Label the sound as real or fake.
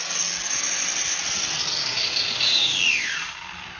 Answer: real